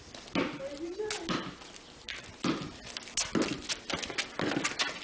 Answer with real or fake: real